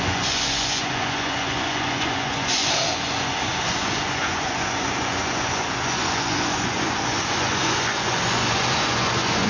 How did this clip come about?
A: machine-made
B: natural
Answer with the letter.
A